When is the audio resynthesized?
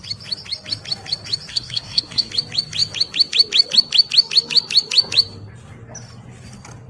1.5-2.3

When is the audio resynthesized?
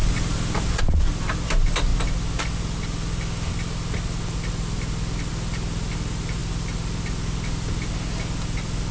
none